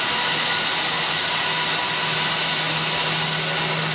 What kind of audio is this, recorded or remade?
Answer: recorded